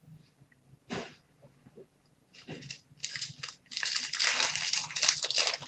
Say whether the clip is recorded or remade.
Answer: recorded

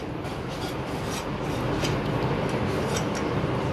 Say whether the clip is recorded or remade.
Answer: recorded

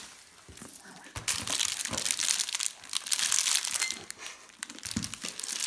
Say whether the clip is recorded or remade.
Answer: recorded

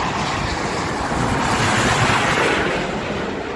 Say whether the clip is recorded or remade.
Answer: recorded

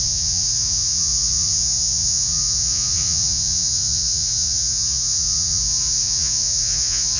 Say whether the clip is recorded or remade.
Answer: remade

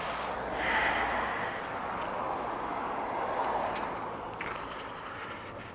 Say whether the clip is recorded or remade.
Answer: recorded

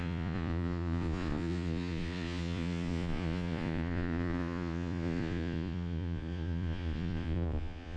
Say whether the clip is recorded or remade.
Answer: remade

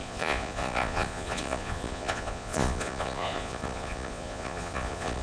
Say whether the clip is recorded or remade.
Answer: remade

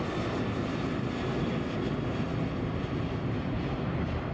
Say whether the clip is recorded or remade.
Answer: recorded